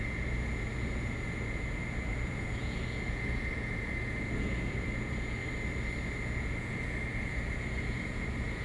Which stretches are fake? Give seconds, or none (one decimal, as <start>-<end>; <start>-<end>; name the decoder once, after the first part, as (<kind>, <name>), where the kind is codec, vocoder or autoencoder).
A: 0.0-5.4 (vocoder, Vocos); 6.4-8.6